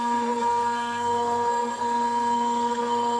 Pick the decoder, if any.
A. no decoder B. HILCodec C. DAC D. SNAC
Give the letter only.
D